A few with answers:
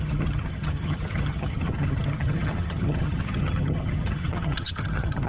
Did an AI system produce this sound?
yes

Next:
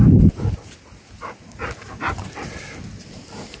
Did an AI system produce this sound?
no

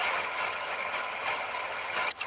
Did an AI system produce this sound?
yes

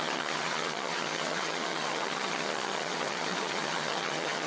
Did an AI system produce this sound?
yes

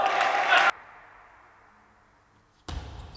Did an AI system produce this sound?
no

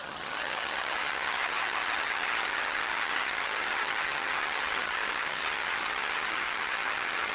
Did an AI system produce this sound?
yes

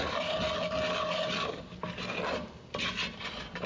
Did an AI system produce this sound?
no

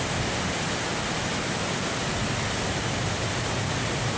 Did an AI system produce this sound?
no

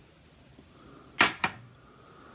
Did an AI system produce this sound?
no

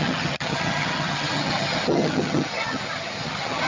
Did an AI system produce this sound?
yes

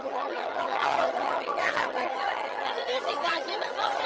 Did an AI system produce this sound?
yes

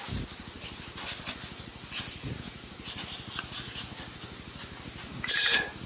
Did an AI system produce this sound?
no